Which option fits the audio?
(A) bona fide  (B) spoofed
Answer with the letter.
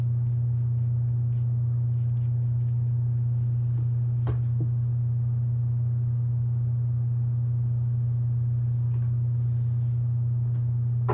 A